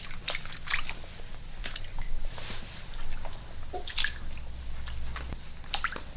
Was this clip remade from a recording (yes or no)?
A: no